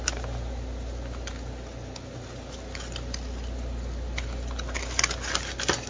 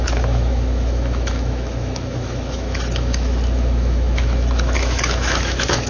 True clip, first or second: first